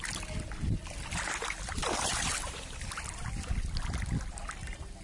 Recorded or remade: recorded